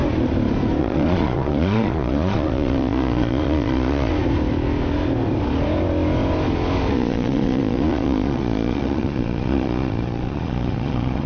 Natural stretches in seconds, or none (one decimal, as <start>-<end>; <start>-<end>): 0.0-0.8; 4.1-6.9